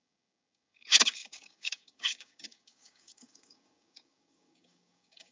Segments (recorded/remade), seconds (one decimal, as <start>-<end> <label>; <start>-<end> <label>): 0.0-5.3 remade

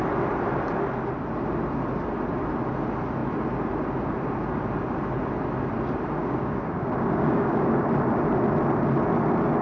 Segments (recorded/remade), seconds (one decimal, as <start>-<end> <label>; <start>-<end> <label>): 0.0-6.2 recorded; 6.2-7.8 remade; 7.8-9.6 recorded